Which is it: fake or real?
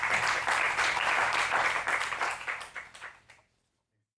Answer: fake